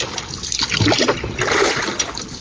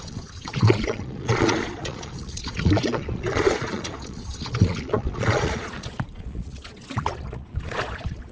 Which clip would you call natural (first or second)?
first